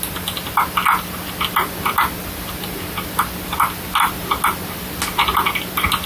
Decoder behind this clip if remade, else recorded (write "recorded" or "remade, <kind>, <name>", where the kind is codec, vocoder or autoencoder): recorded